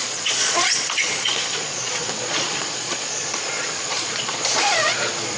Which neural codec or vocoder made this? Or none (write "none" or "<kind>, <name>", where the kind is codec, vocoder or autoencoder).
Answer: vocoder, Vocos